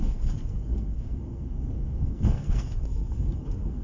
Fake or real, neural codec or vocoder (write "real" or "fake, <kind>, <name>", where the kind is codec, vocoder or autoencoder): fake, codec, SNAC